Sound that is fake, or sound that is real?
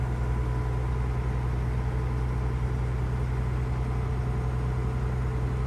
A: real